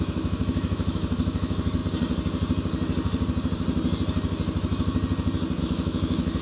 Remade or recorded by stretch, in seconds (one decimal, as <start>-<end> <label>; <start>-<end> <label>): 0.0-1.8 remade; 1.8-5.6 recorded; 5.6-6.4 remade